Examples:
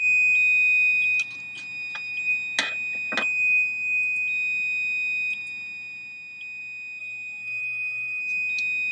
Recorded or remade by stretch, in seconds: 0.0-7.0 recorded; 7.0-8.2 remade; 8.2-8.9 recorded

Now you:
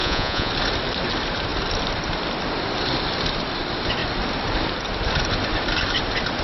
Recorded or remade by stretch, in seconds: 0.0-0.5 remade; 0.5-6.4 recorded

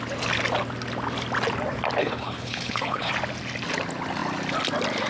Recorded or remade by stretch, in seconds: 0.0-2.0 recorded; 2.0-3.1 remade; 3.1-5.1 recorded